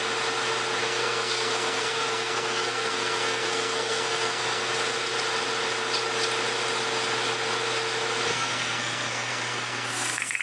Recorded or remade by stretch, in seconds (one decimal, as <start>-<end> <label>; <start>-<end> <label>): 0.0-0.8 recorded; 0.8-4.7 remade; 4.7-8.3 recorded; 8.3-10.4 remade